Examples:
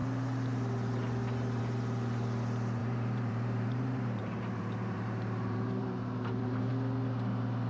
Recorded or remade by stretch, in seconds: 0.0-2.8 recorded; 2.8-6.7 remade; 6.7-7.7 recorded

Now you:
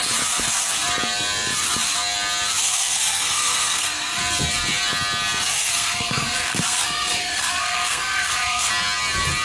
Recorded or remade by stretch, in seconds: 0.0-2.6 recorded; 2.6-4.2 remade; 4.2-5.6 recorded; 5.6-8.7 remade; 8.7-9.4 recorded

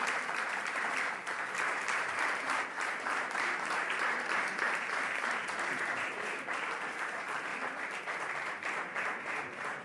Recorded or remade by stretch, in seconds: 0.0-9.8 remade

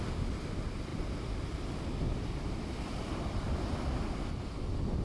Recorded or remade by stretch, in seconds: 0.0-5.0 recorded

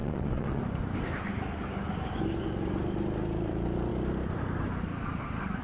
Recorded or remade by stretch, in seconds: 0.0-0.6 remade; 0.6-5.6 recorded

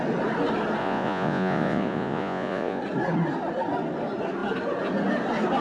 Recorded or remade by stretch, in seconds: 0.0-0.8 recorded; 0.8-2.8 remade; 2.8-5.6 recorded

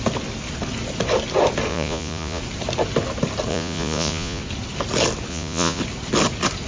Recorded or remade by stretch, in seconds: 0.0-1.7 recorded; 1.7-2.4 remade; 2.4-3.5 recorded; 3.5-4.4 remade; 4.4-5.3 recorded; 5.3-5.8 remade; 5.8-6.7 recorded

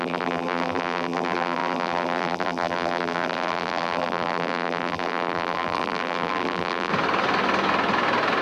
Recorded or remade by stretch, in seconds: 0.0-6.9 remade; 6.9-8.4 recorded